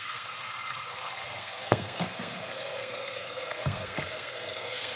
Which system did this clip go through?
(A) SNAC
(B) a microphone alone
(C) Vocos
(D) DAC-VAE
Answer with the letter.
A